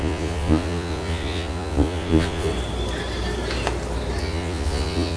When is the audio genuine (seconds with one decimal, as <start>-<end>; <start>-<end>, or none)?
2.5-4.2